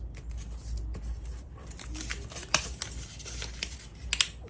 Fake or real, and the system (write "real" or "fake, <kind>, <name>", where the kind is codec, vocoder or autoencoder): real